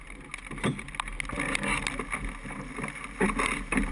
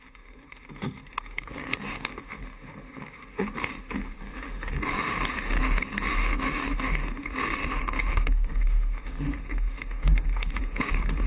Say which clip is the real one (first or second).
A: first